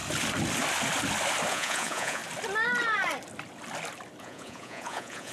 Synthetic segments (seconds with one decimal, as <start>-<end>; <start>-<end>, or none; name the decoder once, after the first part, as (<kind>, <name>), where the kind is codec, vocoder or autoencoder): 1.5-2.2 (vocoder, Vocos); 4.2-5.3